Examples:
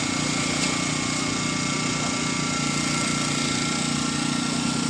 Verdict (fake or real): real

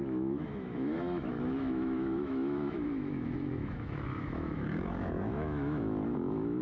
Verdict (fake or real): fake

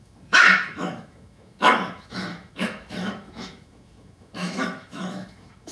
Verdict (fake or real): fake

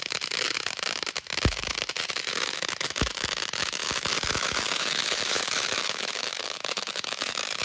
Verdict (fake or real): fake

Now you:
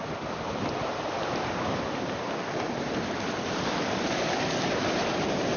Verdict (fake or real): real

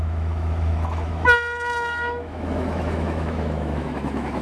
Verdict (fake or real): fake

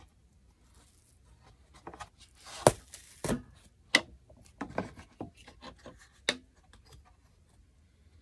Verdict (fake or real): real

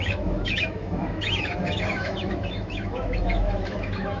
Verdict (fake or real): fake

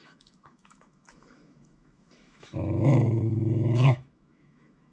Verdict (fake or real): fake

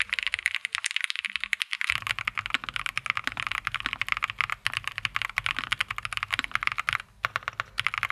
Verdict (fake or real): real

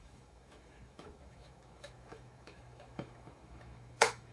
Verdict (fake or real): fake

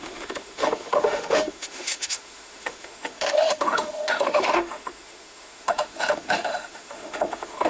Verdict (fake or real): fake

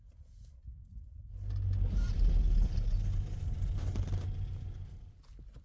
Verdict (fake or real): real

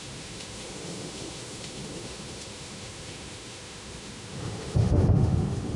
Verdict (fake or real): fake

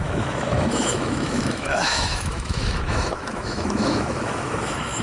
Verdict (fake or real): fake